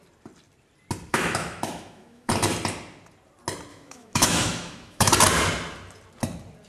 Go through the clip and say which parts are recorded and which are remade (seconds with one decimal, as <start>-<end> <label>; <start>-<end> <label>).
0.0-1.1 recorded; 1.1-2.3 remade; 2.3-3.7 recorded; 3.7-5.1 remade; 5.1-6.7 recorded